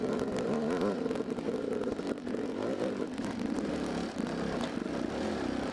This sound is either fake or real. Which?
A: real